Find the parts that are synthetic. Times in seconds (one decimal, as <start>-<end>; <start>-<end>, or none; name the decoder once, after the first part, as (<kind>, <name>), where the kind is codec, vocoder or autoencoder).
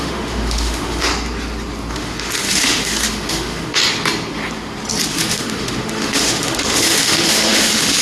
0.0-1.1 (autoencoder, DAC-VAE); 1.9-3.8; 5.1-8.0